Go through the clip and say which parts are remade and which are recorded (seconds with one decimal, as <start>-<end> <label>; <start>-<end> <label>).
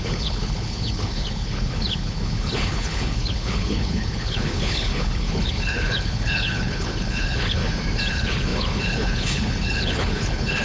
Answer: 0.0-7.6 remade; 7.6-8.1 recorded; 8.1-10.6 remade